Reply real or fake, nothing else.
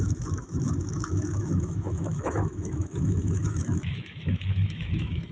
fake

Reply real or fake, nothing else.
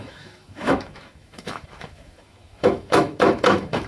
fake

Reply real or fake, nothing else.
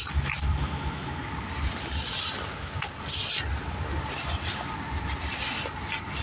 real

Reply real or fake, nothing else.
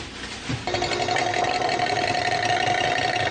real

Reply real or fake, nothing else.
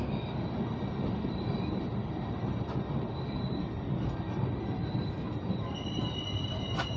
real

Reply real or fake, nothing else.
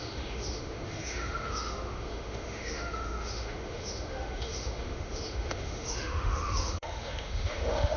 fake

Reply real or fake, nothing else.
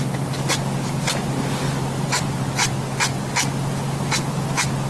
real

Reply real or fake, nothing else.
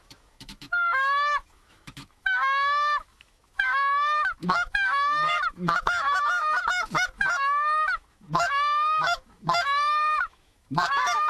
fake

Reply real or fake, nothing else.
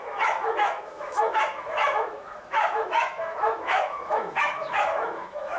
fake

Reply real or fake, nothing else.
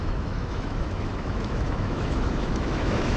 fake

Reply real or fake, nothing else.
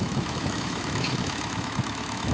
fake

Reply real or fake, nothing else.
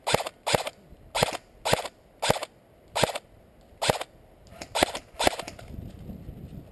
real